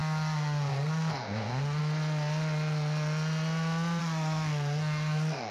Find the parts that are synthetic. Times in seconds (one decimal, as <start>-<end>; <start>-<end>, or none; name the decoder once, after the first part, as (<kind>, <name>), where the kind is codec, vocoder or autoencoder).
0.0-1.8 (codec, SNAC); 4.0-5.5